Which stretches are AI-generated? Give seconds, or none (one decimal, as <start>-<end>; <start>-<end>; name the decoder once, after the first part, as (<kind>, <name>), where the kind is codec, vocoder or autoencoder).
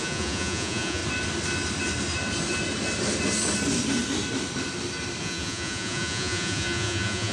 0.0-1.0 (vocoder, Vocos); 5.2-7.3